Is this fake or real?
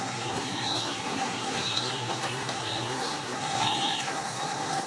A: fake